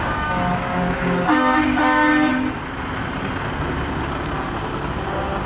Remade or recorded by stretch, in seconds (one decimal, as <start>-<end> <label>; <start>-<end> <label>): 0.0-2.1 remade; 2.1-3.5 recorded; 3.5-4.6 remade; 4.6-5.5 recorded